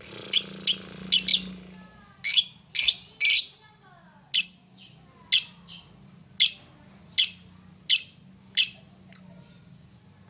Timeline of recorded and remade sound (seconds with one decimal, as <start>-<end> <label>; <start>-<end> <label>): 0.0-10.3 recorded